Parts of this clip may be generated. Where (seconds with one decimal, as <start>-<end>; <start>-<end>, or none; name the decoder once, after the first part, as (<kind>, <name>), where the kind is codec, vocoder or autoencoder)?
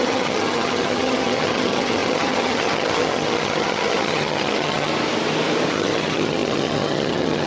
0.0-4.9 (vocoder, HiFi-GAN); 5.7-7.5